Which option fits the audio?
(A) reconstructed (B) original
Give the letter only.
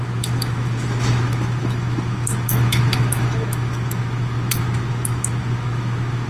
A